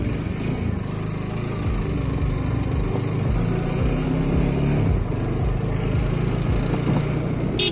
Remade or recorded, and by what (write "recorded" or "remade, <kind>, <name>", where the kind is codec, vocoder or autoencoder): recorded